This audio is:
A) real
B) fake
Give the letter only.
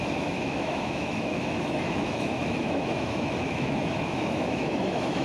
B